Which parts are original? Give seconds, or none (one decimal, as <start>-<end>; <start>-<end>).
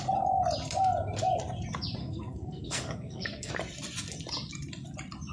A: 0.0-2.0; 3.5-5.3